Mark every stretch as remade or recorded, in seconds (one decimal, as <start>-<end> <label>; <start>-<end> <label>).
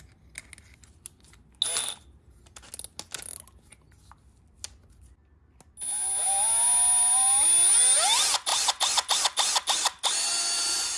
0.0-11.0 recorded